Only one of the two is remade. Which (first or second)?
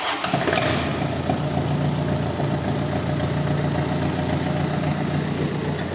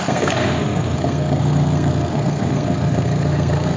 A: second